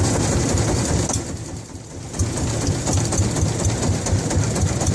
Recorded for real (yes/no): yes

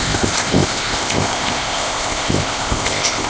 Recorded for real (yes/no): no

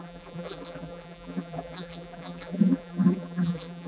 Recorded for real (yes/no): no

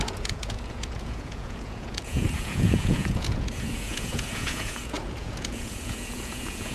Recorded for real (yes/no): no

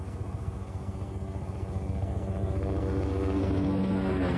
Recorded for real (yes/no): no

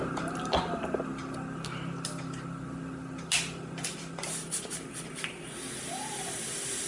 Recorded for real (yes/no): yes